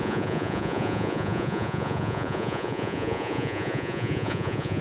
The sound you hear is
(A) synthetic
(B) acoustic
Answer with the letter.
A